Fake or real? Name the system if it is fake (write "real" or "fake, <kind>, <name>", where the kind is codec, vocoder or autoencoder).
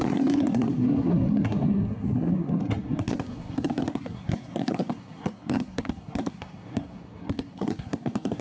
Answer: fake, codec, SNAC